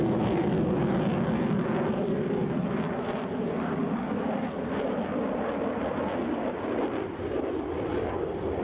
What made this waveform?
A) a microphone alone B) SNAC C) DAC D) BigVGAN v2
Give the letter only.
A